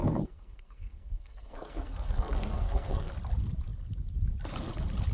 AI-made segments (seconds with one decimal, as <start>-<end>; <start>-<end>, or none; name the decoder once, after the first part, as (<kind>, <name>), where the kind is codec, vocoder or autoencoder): 0.0-3.1 (codec, SNAC)

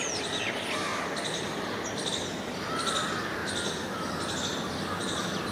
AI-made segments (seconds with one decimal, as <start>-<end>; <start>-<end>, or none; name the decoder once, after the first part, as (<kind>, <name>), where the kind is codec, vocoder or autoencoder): none

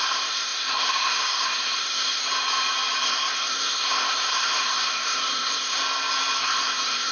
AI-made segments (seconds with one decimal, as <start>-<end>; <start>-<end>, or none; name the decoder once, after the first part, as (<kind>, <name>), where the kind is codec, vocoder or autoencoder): 0.0-2.2 (codec, SNAC); 3.0-5.8; 6.4-7.1

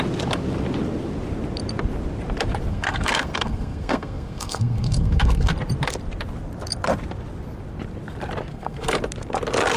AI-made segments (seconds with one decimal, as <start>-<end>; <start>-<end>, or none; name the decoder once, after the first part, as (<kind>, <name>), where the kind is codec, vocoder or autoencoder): 2.7-5.5 (codec, SNAC); 8.5-9.0

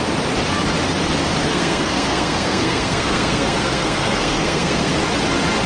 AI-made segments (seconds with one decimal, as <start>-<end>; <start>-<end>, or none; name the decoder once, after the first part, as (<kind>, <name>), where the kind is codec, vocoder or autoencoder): 1.5-4.9 (codec, SNAC)

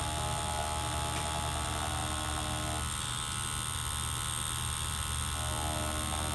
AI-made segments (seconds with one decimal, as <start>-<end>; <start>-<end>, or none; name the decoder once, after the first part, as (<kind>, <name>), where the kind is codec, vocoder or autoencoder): none

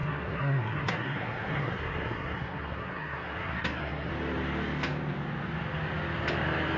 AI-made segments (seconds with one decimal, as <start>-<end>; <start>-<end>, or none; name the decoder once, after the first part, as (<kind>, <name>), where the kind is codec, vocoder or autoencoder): 0.0-4.1 (codec, SNAC)